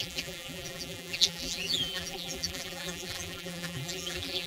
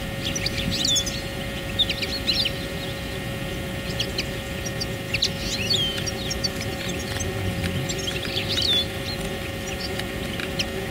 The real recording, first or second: second